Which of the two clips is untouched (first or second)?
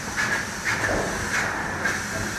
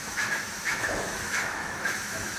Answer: first